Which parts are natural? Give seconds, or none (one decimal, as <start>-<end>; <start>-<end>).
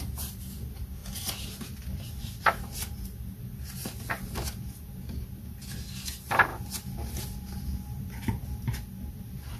0.0-9.6